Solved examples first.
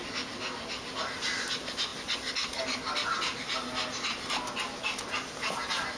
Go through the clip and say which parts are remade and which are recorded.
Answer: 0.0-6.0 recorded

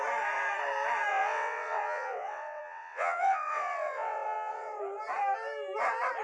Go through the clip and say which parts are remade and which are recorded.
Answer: 0.0-1.1 recorded; 1.1-4.8 remade; 4.8-6.2 recorded

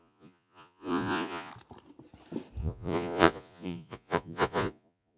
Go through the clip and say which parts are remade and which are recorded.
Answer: 0.0-1.5 remade; 1.5-2.6 recorded; 2.6-5.2 remade

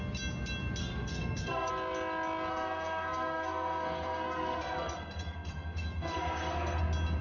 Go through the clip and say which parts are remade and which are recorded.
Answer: 0.0-0.8 recorded; 0.8-1.7 remade; 1.7-2.5 recorded; 2.5-6.8 remade; 6.8-7.2 recorded

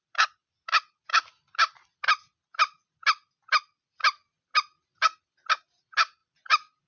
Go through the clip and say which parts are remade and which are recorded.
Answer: 0.0-6.9 recorded

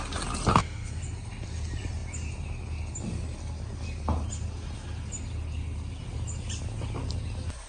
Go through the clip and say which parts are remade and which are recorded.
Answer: 0.0-0.5 recorded; 0.5-1.0 remade; 1.0-7.7 recorded

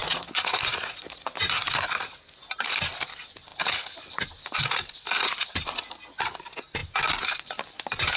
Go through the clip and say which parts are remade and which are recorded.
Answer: 0.0-1.2 remade; 1.2-8.2 recorded